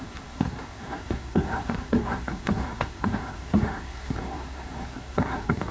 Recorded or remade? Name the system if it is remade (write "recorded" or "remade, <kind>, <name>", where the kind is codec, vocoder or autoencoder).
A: remade, codec, SNAC